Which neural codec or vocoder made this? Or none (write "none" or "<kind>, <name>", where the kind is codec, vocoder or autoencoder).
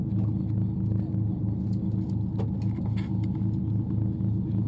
none